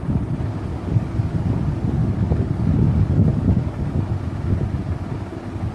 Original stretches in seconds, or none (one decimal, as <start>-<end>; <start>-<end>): 0.0-0.7; 1.5-2.0; 3.9-5.7